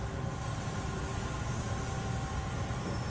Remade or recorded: recorded